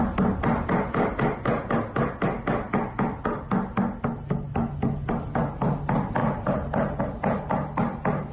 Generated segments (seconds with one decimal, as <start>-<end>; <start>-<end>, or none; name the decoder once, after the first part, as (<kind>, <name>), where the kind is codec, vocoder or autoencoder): 6.2-7.0 (vocoder, BigVGAN v2)

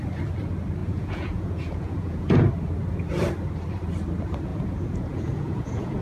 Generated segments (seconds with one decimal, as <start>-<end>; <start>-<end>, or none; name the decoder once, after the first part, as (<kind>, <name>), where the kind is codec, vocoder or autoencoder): 0.8-2.5 (vocoder, Vocos); 4.5-6.0

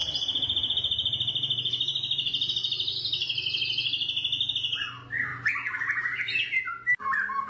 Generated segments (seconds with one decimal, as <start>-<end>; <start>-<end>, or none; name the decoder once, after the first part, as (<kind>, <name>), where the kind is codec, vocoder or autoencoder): none

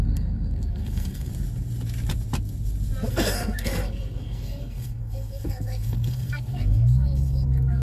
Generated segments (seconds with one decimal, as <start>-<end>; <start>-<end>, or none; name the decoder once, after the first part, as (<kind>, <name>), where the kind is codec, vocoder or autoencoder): 0.0-1.3 (codec, SNAC); 3.1-7.8

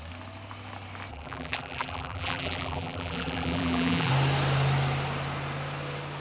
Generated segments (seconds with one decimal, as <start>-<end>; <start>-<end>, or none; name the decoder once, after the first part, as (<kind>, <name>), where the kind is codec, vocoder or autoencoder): 1.1-4.1 (vocoder, BigVGAN v2)

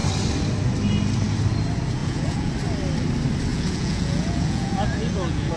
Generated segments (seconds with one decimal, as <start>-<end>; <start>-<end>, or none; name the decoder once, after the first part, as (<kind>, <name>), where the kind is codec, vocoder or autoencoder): 2.0-2.5 (vocoder, Vocos); 3.5-5.6

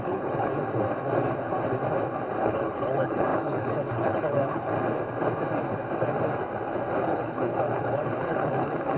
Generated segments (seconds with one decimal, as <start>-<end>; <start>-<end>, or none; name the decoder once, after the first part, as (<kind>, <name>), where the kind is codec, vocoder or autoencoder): 0.0-0.5 (codec, HILCodec); 2.4-4.7; 7.0-9.0

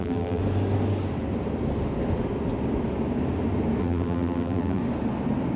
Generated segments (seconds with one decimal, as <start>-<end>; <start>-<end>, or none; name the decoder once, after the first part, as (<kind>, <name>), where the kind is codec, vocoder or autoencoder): 0.0-0.4 (vocoder, BigVGAN v2); 3.8-4.8